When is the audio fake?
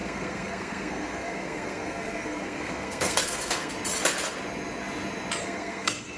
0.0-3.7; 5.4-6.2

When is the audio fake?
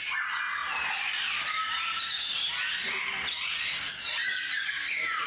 none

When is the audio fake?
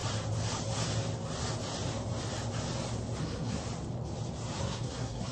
3.2-3.6; 4.6-5.3